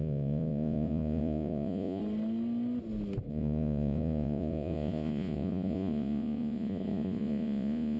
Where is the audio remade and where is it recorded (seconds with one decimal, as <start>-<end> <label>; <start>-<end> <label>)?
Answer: 0.0-2.0 remade; 2.0-3.3 recorded; 3.3-8.0 remade